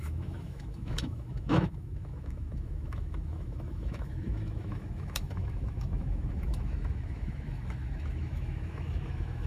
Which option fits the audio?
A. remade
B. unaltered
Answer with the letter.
A